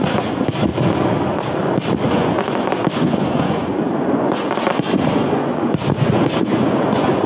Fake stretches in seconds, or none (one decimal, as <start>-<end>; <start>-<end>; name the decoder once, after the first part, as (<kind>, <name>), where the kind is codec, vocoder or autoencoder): 0.0-0.7 (vocoder, Vocos); 2.1-7.3